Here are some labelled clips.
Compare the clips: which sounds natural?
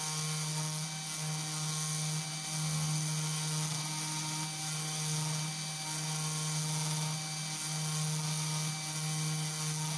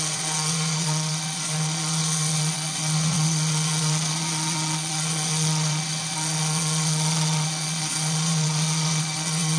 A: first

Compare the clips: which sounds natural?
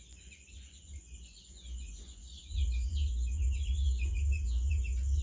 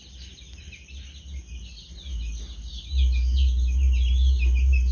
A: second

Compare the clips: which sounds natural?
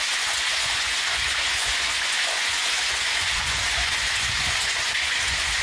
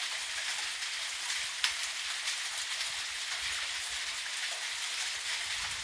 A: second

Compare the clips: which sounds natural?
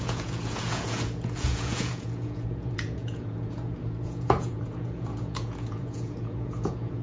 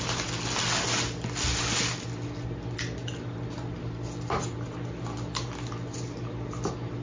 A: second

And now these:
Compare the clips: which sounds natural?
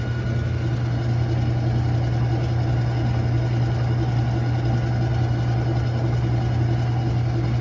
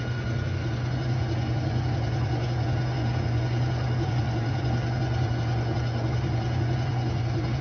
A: first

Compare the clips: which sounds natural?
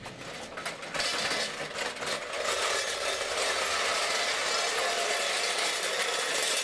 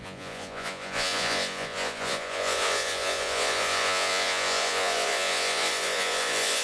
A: first